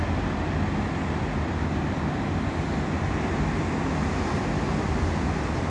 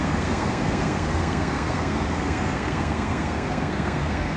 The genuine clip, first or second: first